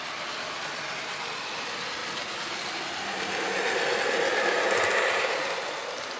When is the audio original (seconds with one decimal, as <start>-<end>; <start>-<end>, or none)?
0.0-6.2